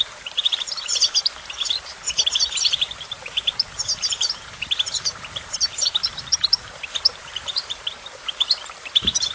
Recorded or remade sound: remade